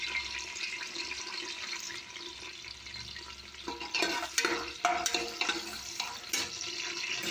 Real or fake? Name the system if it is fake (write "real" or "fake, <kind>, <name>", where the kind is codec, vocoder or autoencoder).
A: real